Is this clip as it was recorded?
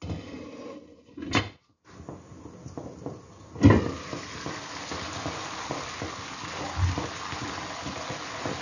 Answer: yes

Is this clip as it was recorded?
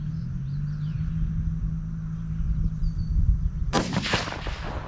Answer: yes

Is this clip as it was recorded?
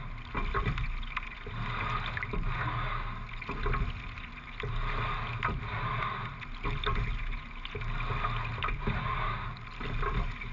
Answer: yes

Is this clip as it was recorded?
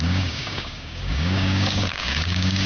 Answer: no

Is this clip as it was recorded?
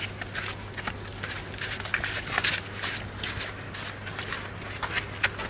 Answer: yes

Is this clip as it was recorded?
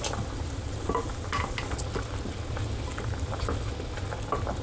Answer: yes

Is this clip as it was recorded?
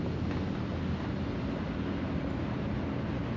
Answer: yes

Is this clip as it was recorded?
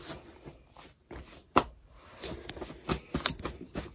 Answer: yes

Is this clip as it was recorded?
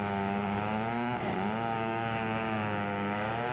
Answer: no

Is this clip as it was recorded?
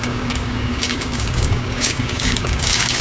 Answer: no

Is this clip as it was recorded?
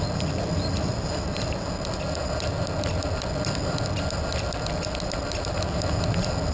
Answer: yes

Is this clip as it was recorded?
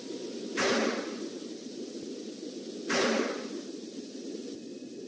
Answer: yes